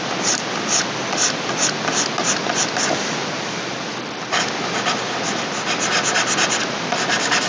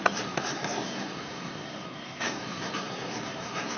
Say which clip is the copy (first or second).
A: second